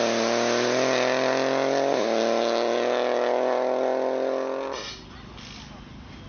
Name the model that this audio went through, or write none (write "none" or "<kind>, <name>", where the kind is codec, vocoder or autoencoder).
none